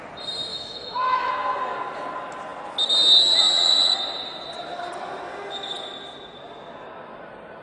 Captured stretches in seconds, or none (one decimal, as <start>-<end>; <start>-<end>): 0.0-0.5; 1.3-7.6